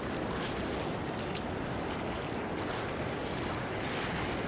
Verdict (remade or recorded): recorded